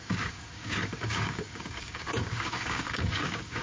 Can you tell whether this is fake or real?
fake